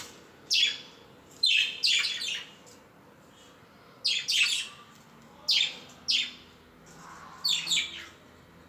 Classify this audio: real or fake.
real